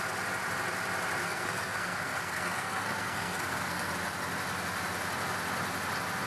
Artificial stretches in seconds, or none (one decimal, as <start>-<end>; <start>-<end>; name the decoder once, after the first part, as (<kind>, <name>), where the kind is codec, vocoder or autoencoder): 1.2-3.9 (codec, SNAC)